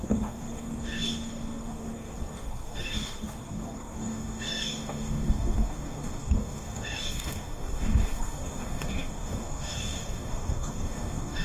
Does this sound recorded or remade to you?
remade